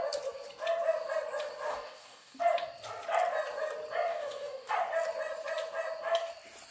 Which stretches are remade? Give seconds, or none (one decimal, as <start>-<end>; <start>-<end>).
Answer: 1.7-2.4; 4.1-4.7